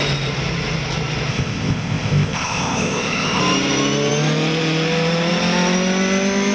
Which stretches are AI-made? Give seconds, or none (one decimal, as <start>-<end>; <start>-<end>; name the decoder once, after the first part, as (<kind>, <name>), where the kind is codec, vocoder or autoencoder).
1.3-3.4 (codec, ZipCodec)